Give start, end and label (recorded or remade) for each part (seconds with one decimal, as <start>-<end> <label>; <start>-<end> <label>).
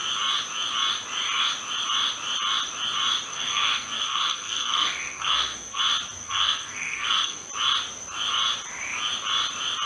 0.0-3.3 recorded; 3.3-5.8 remade; 5.8-6.2 recorded; 6.2-7.5 remade; 7.5-9.9 recorded